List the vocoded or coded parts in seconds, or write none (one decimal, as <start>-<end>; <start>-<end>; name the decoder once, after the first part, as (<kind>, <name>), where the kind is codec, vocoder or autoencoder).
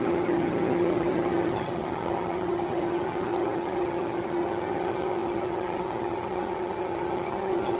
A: 0.0-7.8 (vocoder, HiFi-GAN)